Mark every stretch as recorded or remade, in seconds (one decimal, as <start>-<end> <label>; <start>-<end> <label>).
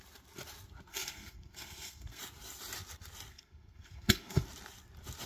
0.0-0.9 recorded; 0.9-2.2 remade; 2.2-3.3 recorded; 3.3-4.4 remade; 4.4-5.3 recorded